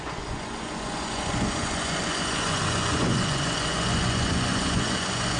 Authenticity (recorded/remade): remade